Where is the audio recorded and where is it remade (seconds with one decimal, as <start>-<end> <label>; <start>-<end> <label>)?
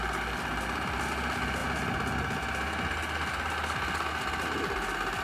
0.0-5.2 recorded